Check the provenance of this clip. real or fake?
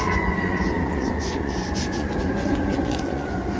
fake